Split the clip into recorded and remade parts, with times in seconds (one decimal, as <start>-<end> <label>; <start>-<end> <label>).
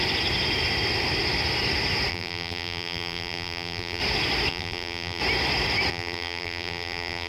0.0-2.1 recorded; 2.1-4.0 remade; 4.0-4.5 recorded; 4.5-5.2 remade; 5.2-5.9 recorded; 5.9-7.3 remade